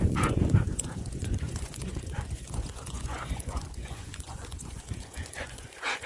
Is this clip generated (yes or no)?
yes